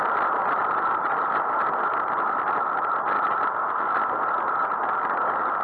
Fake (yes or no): no